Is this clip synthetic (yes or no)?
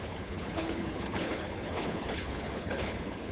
yes